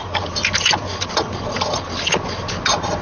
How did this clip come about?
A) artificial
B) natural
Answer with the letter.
B